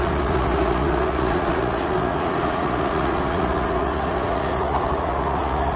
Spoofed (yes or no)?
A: yes